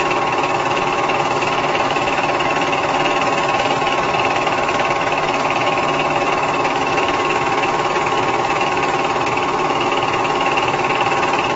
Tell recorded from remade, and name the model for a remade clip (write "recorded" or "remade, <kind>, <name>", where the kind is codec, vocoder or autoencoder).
remade, autoencoder, DAC-VAE